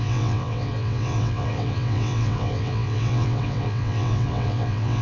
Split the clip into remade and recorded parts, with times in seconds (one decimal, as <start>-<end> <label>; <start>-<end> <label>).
0.0-5.0 remade